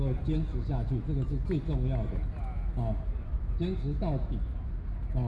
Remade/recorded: recorded